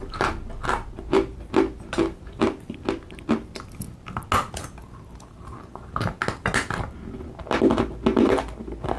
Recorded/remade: recorded